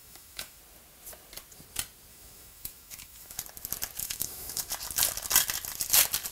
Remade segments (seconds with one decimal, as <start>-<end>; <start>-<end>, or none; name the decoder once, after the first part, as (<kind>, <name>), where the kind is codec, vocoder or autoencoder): 0.0-0.6 (autoencoder, DAC-VAE); 2.1-3.4; 4.0-4.7